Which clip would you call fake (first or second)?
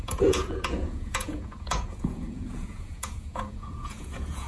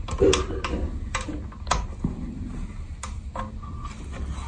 first